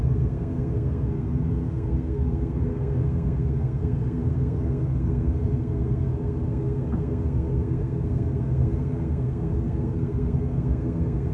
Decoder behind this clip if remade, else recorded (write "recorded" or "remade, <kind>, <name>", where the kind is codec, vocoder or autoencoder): remade, codec, SNAC